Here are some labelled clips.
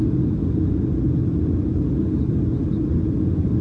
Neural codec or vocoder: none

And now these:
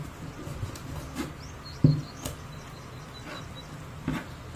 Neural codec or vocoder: none